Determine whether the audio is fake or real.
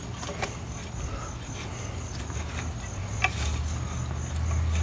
real